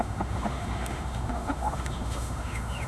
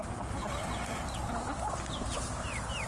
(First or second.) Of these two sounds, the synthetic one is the first